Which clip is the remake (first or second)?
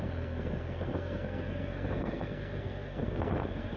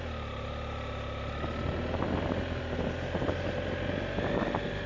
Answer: first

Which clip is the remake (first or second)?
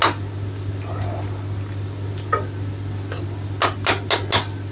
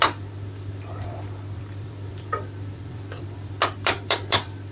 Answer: second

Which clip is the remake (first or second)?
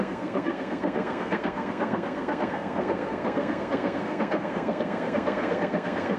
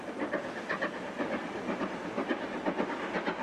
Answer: first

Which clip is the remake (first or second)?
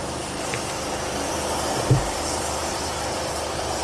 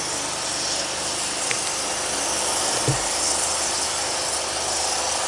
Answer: first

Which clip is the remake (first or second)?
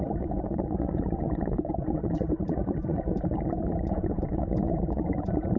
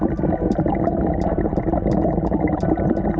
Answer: first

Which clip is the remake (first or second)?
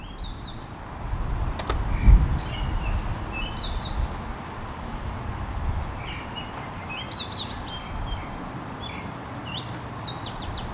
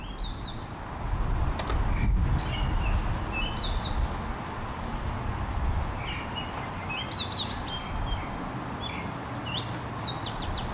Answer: first